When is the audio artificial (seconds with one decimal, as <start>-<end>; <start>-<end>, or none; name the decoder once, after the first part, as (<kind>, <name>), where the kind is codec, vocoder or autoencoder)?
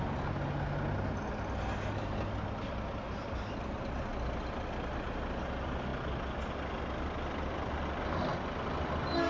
none